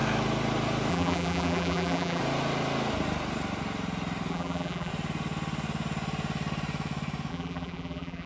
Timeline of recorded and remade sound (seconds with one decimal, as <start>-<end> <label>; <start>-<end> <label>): 0.0-0.9 recorded; 0.9-2.2 remade; 2.2-4.3 recorded; 4.3-4.9 remade; 4.9-7.3 recorded; 7.3-8.3 remade